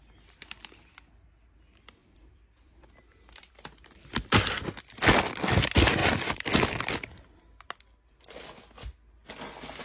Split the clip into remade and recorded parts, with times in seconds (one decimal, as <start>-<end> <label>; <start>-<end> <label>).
0.0-2.0 recorded; 2.0-5.2 remade; 5.2-9.8 recorded